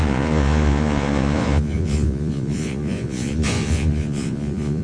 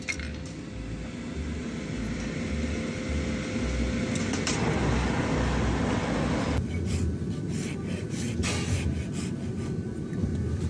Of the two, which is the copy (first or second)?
first